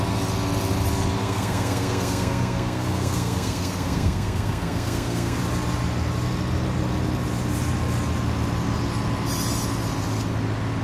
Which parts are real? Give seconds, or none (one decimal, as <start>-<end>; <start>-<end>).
0.0-1.2; 5.4-10.8